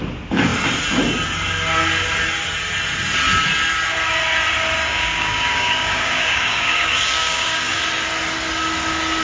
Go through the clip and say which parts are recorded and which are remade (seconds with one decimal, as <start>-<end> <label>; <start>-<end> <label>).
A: 0.0-4.8 recorded; 4.8-7.8 remade; 7.8-9.2 recorded